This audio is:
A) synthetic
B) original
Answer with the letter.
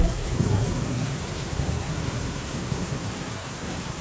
A